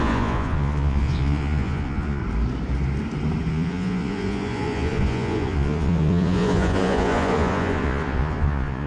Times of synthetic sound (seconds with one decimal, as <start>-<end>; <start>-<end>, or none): 0.0-2.2; 3.5-8.9